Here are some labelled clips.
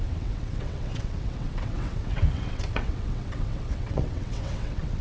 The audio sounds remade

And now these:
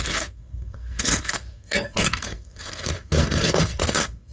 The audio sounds remade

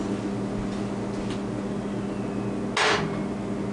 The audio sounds recorded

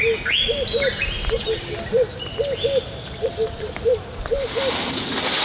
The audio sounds recorded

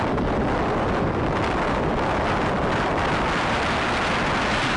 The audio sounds recorded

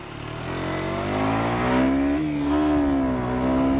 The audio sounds recorded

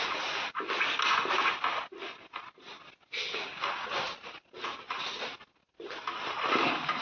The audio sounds recorded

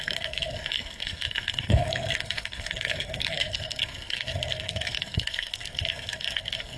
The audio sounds remade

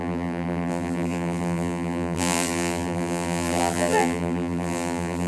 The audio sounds remade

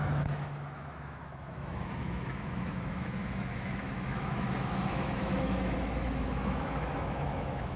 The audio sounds remade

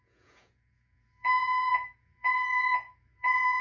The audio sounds remade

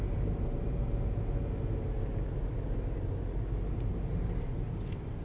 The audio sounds recorded